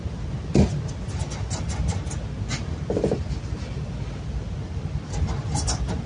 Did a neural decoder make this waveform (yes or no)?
no